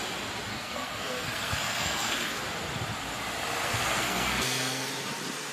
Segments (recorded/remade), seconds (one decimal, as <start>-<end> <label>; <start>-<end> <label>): 0.0-0.5 recorded; 0.5-2.4 remade; 2.4-3.6 recorded; 3.6-4.9 remade; 4.9-5.5 recorded